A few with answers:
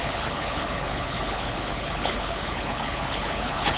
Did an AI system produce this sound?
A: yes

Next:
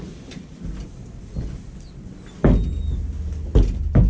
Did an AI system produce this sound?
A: no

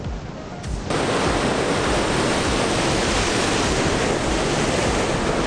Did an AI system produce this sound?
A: no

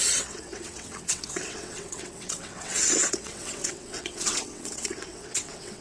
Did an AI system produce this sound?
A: yes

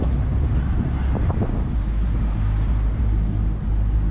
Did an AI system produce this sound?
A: no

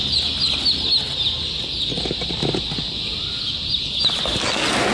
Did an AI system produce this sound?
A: no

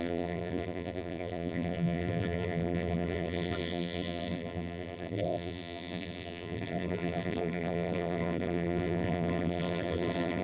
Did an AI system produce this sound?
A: yes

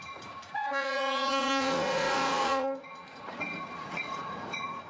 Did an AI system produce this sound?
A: yes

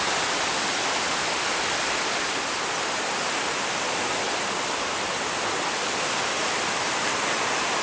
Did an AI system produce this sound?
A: no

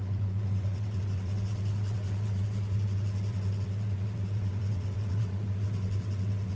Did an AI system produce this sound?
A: yes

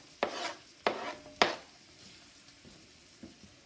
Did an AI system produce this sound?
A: no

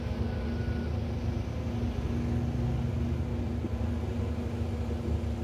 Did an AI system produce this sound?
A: no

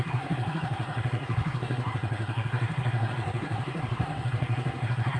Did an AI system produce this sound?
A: yes